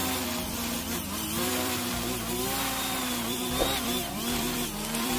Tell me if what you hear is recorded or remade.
remade